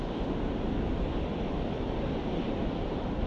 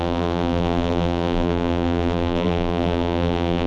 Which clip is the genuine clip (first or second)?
first